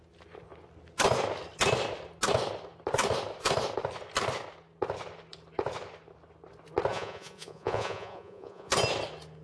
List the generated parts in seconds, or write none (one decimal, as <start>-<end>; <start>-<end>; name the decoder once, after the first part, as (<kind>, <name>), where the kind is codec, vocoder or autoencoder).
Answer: 6.9-8.7 (vocoder, Vocos)